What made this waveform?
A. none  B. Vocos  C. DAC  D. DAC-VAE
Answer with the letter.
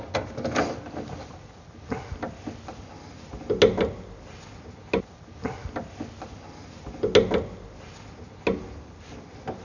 A